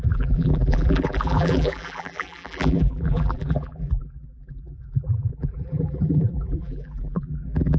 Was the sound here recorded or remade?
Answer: remade